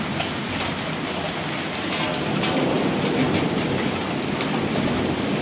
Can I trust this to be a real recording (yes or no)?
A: yes